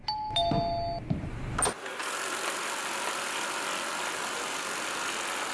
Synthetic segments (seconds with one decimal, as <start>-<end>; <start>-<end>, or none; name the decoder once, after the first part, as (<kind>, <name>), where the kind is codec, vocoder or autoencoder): 2.0-4.2 (vocoder, BigVGAN v2)